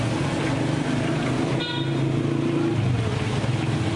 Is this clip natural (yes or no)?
yes